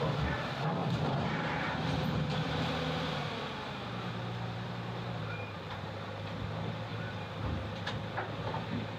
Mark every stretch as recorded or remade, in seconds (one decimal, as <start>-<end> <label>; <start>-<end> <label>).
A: 0.0-0.8 recorded; 0.8-5.9 remade; 5.9-6.9 recorded; 6.9-7.9 remade; 7.9-9.0 recorded